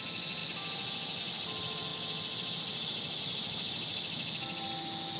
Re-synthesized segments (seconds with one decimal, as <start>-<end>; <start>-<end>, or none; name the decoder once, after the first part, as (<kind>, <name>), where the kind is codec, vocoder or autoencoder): none